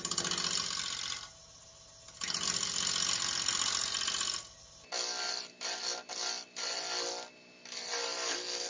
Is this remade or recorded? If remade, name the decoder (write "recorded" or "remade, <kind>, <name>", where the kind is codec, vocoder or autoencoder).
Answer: recorded